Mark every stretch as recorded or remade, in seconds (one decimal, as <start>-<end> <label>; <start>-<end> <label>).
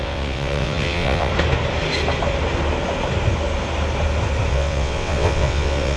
0.0-1.3 remade; 1.3-4.5 recorded; 4.5-6.0 remade